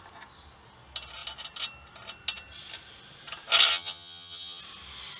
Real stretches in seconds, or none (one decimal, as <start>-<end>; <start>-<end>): 0.0-3.7; 4.6-5.2